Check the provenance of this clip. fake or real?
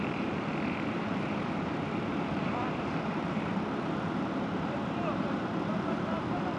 fake